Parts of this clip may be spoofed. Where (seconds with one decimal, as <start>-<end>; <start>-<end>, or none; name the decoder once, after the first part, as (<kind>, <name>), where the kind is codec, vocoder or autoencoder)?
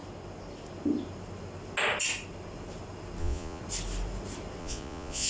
3.2-3.6 (vocoder, Vocos); 4.6-5.3